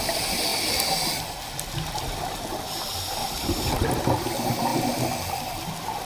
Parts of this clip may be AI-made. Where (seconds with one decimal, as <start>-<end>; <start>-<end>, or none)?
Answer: 3.2-3.7